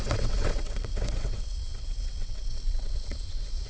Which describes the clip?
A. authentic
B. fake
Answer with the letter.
B